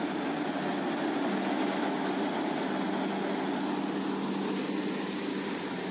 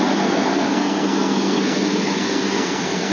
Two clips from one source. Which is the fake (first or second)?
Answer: second